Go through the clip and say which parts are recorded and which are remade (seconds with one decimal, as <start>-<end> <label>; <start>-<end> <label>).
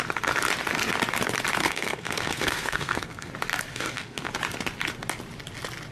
0.0-1.6 recorded; 1.6-3.3 remade; 3.3-3.7 recorded; 3.7-4.3 remade; 4.3-5.9 recorded